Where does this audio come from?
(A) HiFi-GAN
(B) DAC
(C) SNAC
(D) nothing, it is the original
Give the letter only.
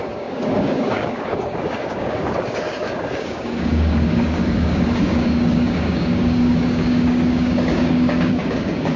B